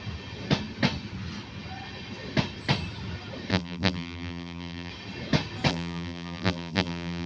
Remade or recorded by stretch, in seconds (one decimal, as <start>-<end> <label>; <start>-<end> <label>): 0.0-3.5 recorded; 3.5-4.9 remade; 4.9-5.7 recorded; 5.7-7.3 remade